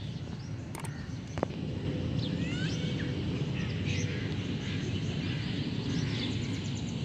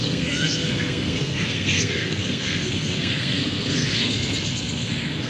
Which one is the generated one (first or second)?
second